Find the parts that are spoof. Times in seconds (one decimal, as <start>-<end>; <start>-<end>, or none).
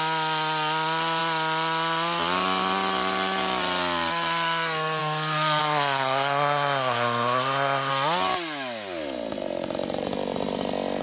5.6-7.9